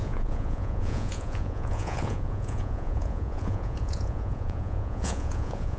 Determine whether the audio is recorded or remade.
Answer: remade